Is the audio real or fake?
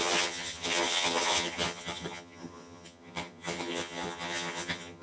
fake